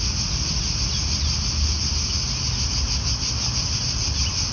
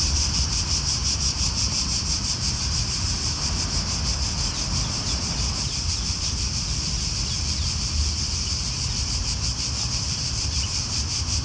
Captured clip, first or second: first